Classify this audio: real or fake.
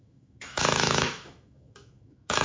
fake